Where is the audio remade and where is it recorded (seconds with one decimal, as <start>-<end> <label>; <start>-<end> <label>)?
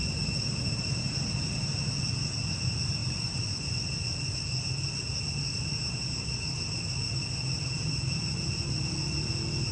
0.0-1.0 remade; 1.0-3.0 recorded; 3.0-3.7 remade; 3.7-9.7 recorded